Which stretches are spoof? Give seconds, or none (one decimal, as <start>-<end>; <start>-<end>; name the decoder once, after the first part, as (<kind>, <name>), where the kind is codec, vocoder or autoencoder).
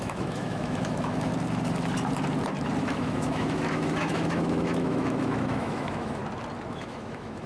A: 0.0-1.3 (autoencoder, DAC-VAE); 2.8-6.2; 6.7-7.5